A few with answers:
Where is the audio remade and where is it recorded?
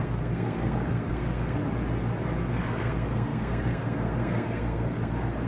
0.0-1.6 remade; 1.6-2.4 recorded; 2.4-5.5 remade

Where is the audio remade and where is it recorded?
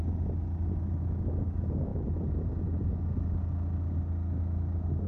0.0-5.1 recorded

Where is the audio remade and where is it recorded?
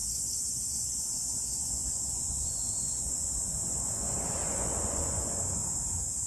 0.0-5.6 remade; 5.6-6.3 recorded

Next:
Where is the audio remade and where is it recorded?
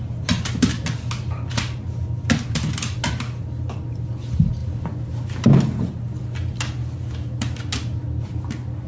0.0-8.9 recorded